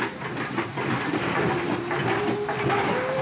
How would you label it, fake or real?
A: fake